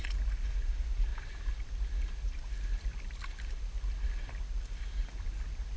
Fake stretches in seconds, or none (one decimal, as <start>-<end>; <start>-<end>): none